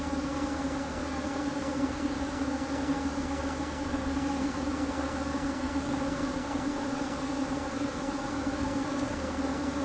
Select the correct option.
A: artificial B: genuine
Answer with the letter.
A